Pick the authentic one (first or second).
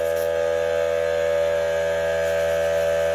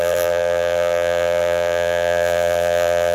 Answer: first